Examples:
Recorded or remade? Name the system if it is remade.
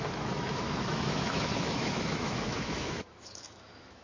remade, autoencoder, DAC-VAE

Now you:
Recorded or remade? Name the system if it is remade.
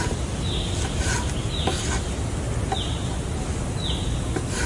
recorded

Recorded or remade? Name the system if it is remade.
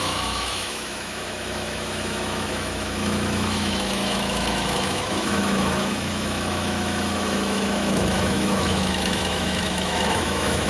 remade, autoencoder, DAC-VAE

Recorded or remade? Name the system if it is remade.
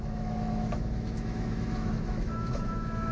remade, autoencoder, DAC-VAE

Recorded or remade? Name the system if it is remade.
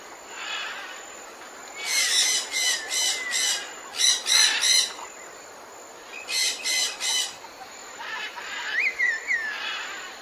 recorded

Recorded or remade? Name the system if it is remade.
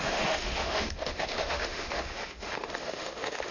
remade, autoencoder, DAC-VAE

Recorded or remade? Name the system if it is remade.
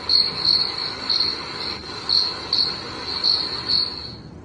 recorded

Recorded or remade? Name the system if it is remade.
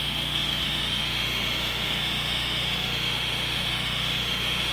remade, autoencoder, DAC-VAE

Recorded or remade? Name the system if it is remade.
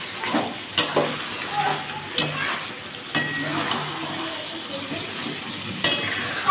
recorded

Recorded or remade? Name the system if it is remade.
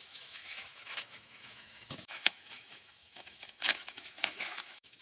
remade, autoencoder, DAC-VAE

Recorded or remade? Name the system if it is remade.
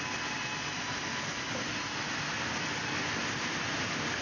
recorded